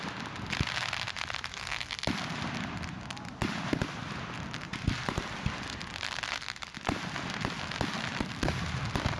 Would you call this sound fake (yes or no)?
no